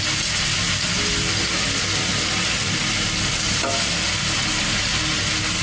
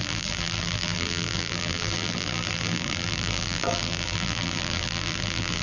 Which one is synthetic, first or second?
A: second